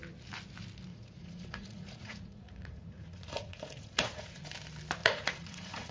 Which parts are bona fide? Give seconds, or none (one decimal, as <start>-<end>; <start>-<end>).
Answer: 0.0-0.9; 4.4-5.0